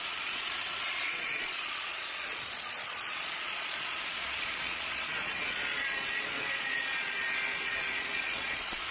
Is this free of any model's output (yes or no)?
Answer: no